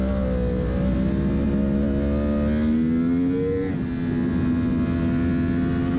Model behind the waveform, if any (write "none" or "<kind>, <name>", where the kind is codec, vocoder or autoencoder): none